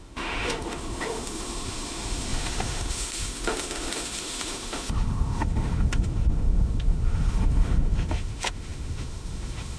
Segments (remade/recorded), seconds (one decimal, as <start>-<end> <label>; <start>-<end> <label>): 0.0-9.8 remade